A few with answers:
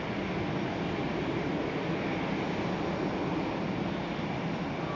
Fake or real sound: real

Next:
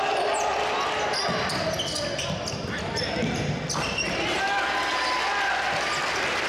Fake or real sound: real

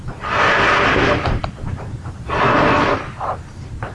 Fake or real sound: real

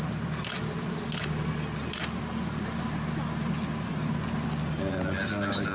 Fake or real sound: real